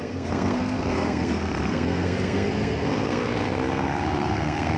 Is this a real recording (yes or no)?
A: no